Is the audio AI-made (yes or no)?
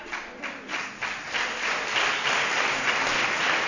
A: no